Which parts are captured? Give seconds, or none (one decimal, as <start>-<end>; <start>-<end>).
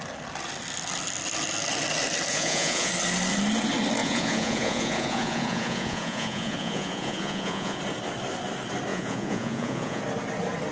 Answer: 0.0-2.3; 2.9-4.0; 7.8-8.9; 10.0-10.7